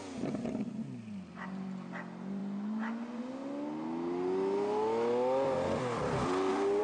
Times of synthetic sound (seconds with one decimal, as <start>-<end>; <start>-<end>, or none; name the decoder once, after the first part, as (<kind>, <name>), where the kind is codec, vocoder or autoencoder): none